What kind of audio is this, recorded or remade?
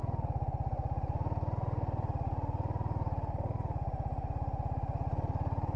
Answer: recorded